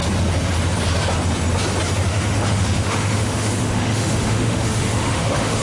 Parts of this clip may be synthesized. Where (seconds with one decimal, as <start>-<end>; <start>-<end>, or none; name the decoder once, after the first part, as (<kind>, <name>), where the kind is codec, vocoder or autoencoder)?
2.1-5.6 (autoencoder, DAC-VAE)